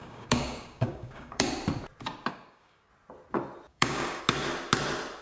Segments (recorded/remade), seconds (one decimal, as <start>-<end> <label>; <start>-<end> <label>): 0.0-1.5 remade; 1.5-2.3 recorded; 2.3-2.9 remade; 2.9-3.7 recorded; 3.7-4.2 remade; 4.2-5.2 recorded